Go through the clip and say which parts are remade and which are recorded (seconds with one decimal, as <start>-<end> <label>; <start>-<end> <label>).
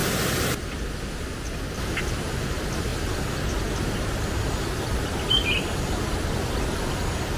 0.0-7.4 recorded